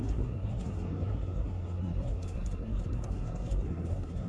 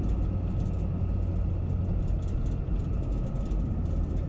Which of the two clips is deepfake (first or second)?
first